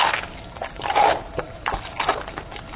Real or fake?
real